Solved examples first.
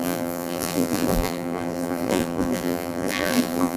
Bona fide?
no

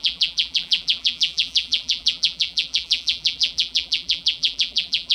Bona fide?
no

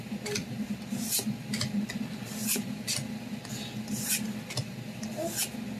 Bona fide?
yes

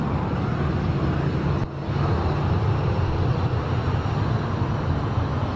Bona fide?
yes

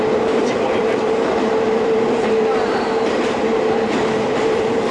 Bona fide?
no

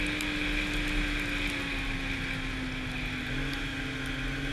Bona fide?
yes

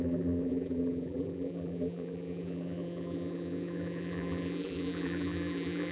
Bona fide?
no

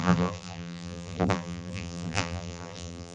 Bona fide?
no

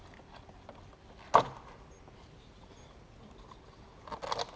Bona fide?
yes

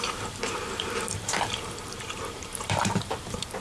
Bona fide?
no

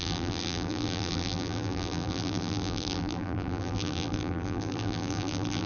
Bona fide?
no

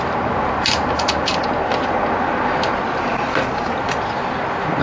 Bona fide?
yes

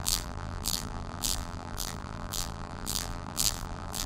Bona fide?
no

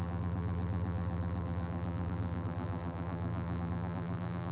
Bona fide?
no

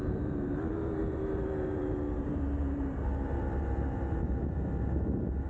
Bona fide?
no